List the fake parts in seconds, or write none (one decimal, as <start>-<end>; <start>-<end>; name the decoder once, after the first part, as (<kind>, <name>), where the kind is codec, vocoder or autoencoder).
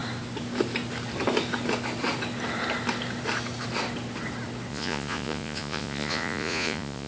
4.7-7.1 (vocoder, Vocos)